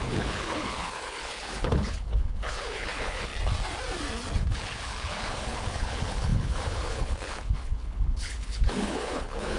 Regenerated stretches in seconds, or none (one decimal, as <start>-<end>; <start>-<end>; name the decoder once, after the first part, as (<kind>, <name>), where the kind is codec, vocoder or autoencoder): 0.0-3.3 (codec, HILCodec); 4.5-9.6